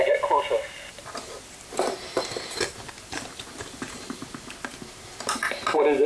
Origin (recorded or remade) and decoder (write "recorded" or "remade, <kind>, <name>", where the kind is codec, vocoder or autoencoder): recorded